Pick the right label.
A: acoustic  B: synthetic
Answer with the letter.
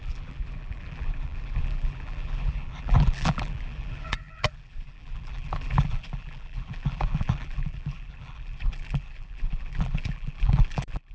B